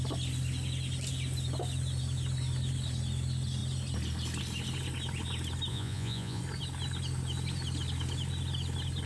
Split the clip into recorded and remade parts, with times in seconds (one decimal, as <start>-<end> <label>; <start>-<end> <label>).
0.0-5.7 recorded; 5.7-6.4 remade; 6.4-9.1 recorded